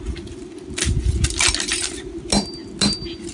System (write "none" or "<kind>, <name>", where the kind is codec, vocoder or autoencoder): none